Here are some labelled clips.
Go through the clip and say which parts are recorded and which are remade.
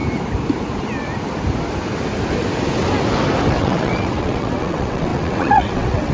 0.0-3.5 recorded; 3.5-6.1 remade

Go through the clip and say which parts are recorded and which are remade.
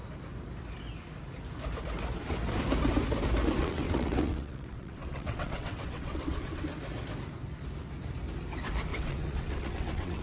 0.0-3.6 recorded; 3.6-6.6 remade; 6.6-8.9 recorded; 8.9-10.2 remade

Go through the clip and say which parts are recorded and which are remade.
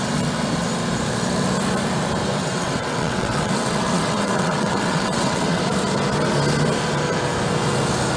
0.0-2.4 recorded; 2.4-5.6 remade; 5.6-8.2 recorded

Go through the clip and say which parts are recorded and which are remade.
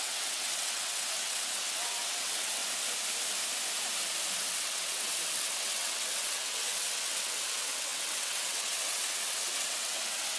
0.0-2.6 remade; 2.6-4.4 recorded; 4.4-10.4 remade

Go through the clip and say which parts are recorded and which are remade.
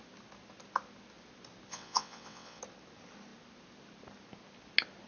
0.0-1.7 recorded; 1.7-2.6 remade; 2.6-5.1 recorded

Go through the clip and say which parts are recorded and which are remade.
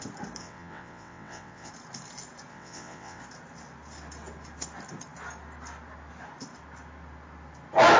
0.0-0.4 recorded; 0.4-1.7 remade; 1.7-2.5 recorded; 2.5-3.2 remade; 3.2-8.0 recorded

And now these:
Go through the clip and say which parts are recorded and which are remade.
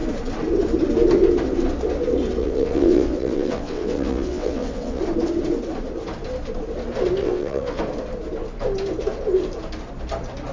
0.0-2.4 recorded; 2.4-5.0 remade; 5.0-7.2 recorded; 7.2-7.8 remade; 7.8-10.5 recorded